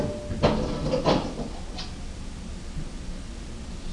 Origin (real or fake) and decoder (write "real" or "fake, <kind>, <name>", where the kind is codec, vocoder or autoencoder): real